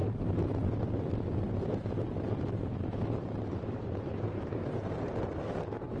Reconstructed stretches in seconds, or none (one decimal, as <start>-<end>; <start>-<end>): 3.1-6.0